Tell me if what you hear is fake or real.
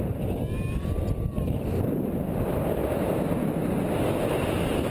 real